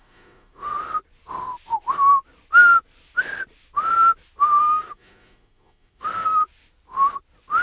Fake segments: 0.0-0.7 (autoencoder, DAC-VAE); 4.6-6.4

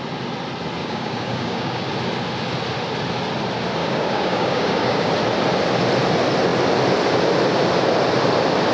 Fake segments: 0.8-1.9 (codec, DAC); 3.8-5.1

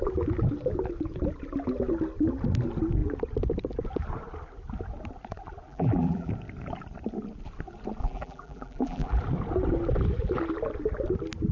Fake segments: 5.7-6.3 (vocoder, BigVGAN v2); 8.0-9.2